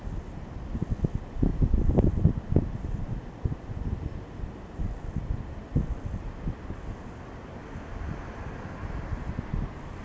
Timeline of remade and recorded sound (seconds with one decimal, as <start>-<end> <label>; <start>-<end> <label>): 0.0-10.0 recorded